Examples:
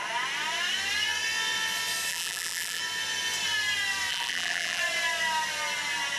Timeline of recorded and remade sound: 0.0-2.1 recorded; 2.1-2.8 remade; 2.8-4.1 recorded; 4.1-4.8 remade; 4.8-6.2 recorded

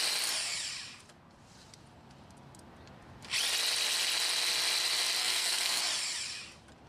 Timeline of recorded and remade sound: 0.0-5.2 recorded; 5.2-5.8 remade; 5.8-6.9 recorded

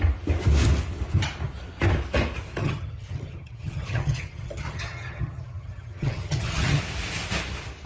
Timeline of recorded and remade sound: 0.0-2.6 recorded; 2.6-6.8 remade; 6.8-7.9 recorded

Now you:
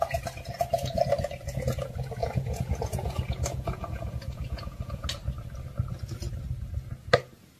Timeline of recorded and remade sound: 0.0-2.2 recorded; 2.2-5.1 remade; 5.1-7.6 recorded

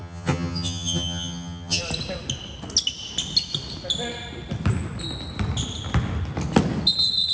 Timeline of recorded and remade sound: 0.0-1.8 remade; 1.8-7.3 recorded

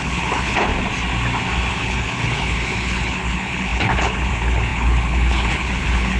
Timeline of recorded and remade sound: 0.0-0.7 remade; 0.7-1.7 recorded; 1.7-6.2 remade

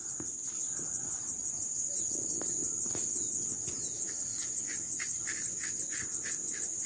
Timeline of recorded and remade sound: 0.0-6.9 recorded

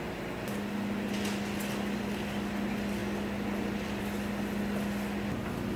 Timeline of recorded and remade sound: 0.0-5.8 recorded